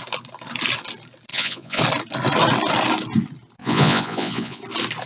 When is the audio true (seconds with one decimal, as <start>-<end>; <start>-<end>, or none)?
0.0-1.3; 1.8-3.6; 4.6-5.1